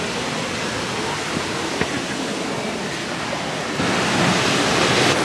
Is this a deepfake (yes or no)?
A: no